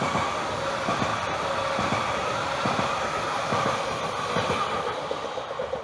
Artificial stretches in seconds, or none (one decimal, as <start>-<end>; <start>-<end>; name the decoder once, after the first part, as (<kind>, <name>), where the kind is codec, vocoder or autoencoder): none